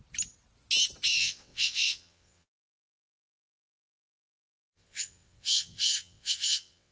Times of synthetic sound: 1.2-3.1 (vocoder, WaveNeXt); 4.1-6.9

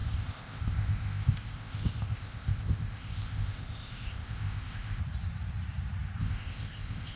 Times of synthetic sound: 0.0-5.0 (codec, ZipCodec); 6.2-7.2

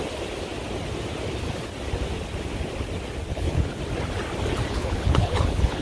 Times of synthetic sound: 3.3-3.8 (codec, HILCodec); 4.7-5.8

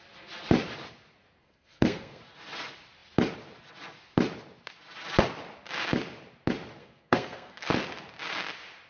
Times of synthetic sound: 1.4-2.2 (codec, SNAC); 6.8-7.7